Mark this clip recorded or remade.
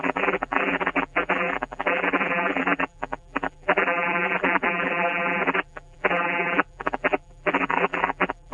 remade